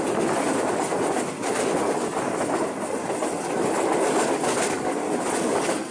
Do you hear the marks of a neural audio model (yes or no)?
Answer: no